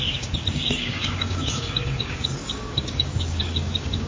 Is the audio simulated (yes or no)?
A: yes